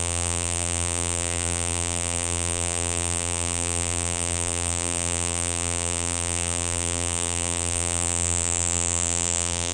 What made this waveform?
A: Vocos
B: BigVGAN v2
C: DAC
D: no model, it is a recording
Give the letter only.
B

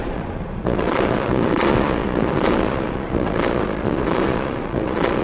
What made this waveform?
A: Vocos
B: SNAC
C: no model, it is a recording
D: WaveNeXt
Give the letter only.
A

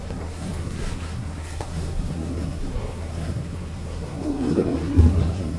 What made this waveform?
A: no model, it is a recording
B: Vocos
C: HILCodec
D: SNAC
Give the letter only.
D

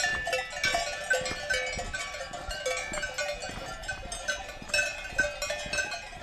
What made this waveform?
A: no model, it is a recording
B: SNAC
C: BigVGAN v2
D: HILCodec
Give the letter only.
A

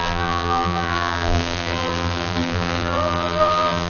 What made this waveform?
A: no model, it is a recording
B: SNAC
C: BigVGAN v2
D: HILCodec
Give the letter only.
C